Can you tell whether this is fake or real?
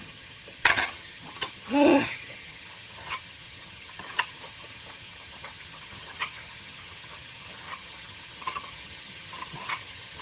fake